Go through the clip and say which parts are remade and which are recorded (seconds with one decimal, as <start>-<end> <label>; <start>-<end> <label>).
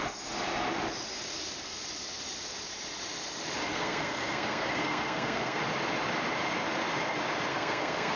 0.0-3.7 recorded; 3.7-5.6 remade; 5.6-7.5 recorded; 7.5-8.2 remade